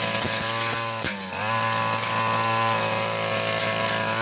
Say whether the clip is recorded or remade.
recorded